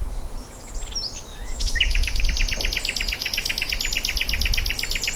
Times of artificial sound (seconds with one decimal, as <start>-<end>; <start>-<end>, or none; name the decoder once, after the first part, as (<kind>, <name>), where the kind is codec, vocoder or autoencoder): 0.0-0.7 (autoencoder, DAC-VAE); 1.3-2.2; 3.2-3.7